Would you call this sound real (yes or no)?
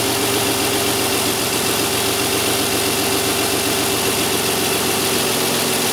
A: yes